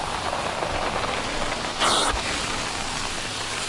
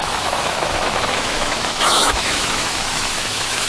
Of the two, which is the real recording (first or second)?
first